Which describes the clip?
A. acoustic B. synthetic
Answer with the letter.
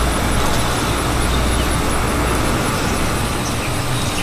A